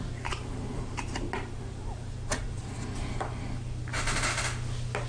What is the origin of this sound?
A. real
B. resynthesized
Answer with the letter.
A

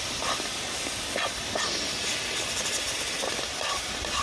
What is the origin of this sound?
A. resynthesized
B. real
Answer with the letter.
B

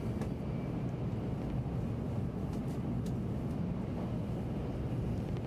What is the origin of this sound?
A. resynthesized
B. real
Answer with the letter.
B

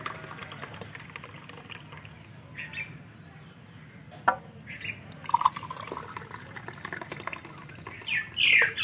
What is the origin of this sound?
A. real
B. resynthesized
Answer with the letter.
A